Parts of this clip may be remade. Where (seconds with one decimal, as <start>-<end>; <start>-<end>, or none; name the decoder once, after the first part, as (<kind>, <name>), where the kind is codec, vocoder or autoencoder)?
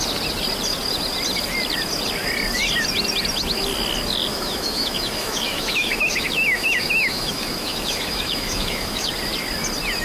4.3-9.1 (autoencoder, DAC-VAE)